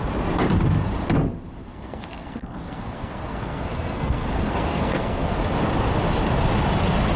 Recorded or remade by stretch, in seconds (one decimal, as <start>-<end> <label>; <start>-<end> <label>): 0.0-1.6 recorded; 1.6-5.4 remade; 5.4-7.2 recorded